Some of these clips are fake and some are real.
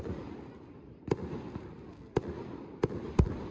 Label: real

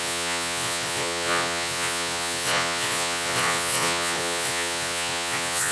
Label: fake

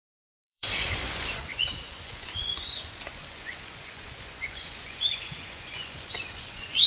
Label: fake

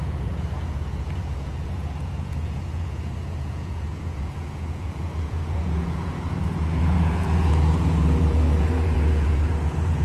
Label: fake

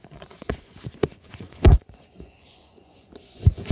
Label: fake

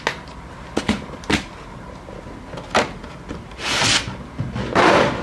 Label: real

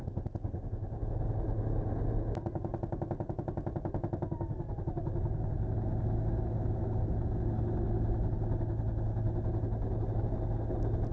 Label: real